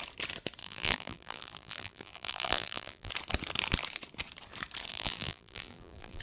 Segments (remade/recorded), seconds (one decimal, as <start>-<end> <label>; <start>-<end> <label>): 0.0-0.6 recorded; 0.6-3.1 remade; 3.1-4.9 recorded; 4.9-6.2 remade

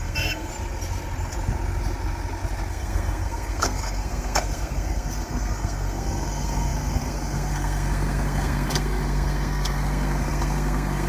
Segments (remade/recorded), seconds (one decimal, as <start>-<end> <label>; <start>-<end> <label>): 0.0-0.5 remade; 0.5-2.7 recorded; 2.7-11.1 remade

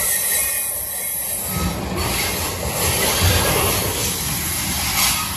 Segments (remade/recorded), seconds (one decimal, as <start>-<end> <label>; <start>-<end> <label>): 0.0-4.0 recorded; 4.0-4.9 remade; 4.9-5.4 recorded

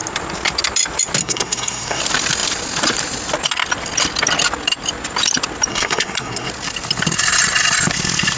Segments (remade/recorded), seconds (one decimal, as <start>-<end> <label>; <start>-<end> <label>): 0.0-1.2 recorded; 1.2-2.0 remade; 2.0-5.7 recorded; 5.7-6.5 remade; 6.5-8.4 recorded

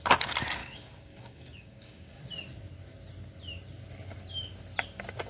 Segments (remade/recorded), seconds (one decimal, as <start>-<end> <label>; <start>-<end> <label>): 0.0-0.6 recorded; 0.6-2.2 remade; 2.2-5.3 recorded